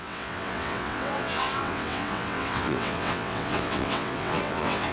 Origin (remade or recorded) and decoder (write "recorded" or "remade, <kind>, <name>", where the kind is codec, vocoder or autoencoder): remade, vocoder, WaveNeXt